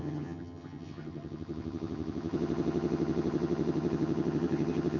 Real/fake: fake